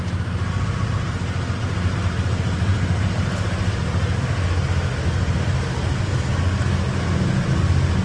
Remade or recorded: recorded